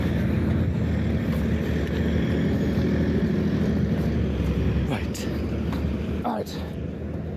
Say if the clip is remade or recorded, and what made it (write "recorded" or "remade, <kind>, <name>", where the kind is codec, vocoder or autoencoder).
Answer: recorded